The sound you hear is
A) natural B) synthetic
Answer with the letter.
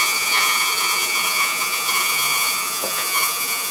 B